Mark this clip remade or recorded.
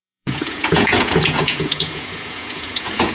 remade